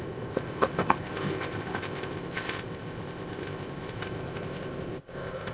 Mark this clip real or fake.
fake